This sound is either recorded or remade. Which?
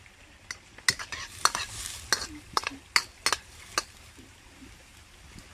recorded